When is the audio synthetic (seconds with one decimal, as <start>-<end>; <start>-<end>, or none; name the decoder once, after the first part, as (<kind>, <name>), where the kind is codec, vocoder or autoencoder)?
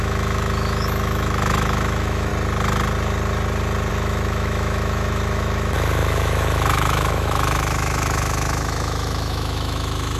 0.0-2.3 (autoencoder, DAC-VAE); 3.9-10.2